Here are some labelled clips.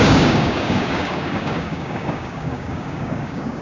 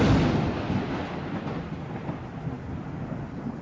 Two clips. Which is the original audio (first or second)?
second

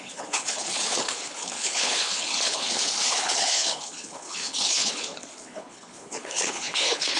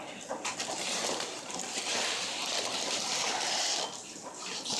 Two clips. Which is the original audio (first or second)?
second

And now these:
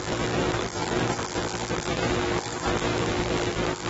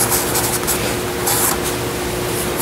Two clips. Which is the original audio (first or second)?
second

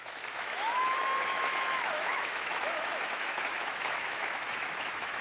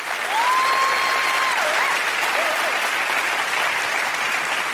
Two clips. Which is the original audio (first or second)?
second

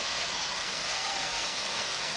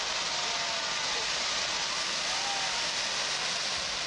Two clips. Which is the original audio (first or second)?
second